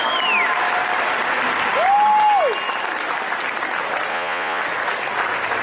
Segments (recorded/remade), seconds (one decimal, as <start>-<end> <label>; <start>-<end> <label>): 0.0-4.1 recorded; 4.1-4.6 remade; 4.6-5.6 recorded